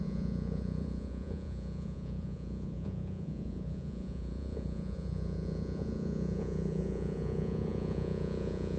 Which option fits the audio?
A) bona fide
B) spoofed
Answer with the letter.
B